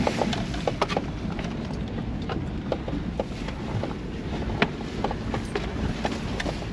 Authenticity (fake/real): real